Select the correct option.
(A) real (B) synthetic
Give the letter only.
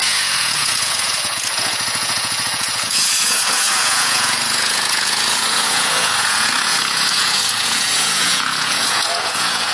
B